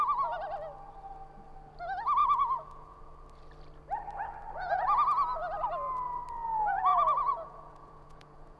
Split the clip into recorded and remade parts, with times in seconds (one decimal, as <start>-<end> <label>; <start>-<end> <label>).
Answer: 0.0-2.2 recorded; 2.2-3.0 remade; 3.0-6.9 recorded; 6.9-8.6 remade